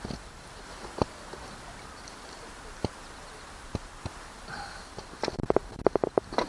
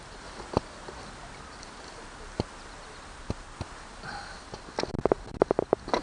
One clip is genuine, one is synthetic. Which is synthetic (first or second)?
first